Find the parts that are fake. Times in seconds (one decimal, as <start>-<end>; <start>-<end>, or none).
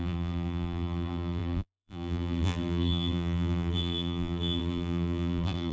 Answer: 0.0-5.7